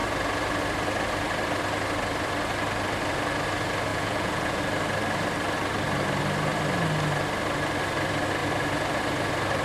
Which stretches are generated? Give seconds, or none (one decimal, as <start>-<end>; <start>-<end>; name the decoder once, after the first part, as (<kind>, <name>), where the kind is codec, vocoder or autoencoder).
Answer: 3.9-4.6 (vocoder, Vocos)